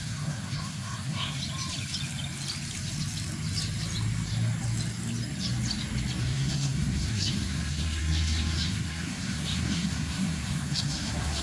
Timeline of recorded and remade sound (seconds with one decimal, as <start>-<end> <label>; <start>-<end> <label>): 0.0-1.4 remade; 1.4-6.2 recorded; 6.2-11.4 remade